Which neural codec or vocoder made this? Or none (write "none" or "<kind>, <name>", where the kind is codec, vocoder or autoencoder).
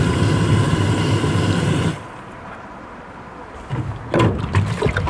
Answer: none